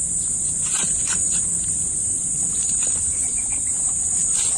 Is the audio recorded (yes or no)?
no